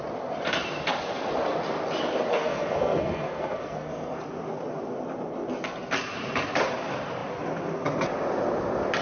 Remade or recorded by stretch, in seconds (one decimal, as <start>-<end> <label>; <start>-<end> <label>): 0.0-2.3 recorded; 2.3-4.2 remade; 4.2-9.0 recorded